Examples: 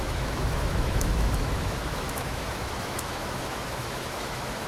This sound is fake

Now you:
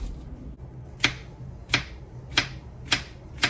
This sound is real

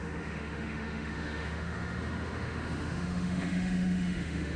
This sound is fake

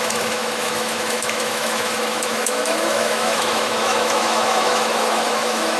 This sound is fake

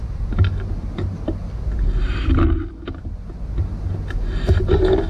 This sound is real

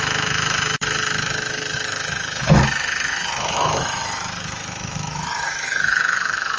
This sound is fake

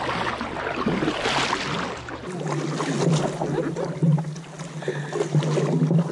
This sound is real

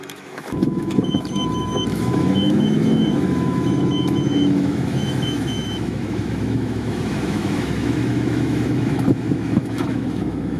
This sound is fake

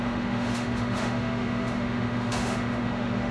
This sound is fake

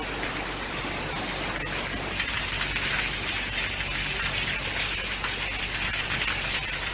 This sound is real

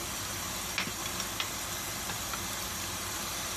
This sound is real